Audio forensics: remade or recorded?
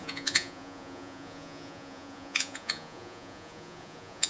remade